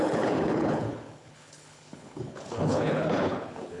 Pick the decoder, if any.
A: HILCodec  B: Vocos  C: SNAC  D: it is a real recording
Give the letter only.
A